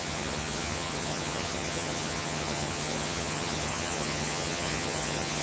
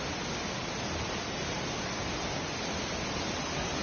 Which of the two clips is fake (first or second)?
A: first